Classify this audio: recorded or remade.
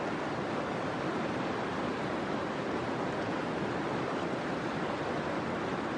recorded